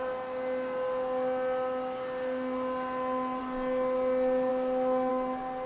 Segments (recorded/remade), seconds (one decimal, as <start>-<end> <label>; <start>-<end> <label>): 0.0-5.7 recorded